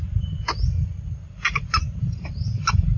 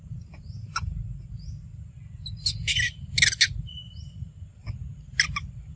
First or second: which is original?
second